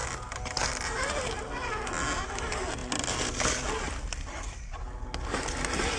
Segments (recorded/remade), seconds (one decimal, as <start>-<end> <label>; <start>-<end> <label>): 0.0-6.0 recorded